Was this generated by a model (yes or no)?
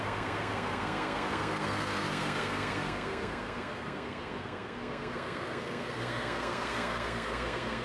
yes